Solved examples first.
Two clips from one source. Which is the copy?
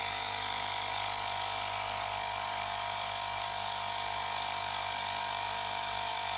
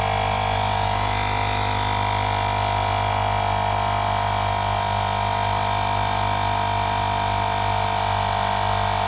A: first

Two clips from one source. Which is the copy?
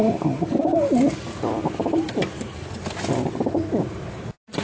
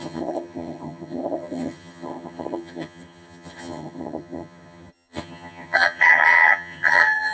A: second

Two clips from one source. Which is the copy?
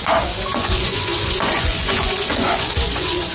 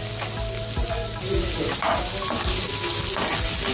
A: first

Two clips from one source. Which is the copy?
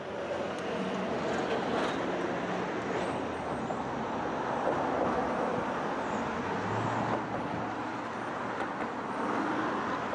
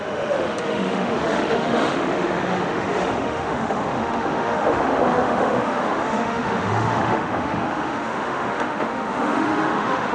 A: second